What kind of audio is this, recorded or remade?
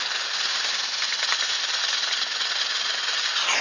recorded